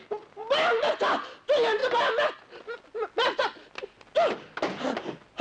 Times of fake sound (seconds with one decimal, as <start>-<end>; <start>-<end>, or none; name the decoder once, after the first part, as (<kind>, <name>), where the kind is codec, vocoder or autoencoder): none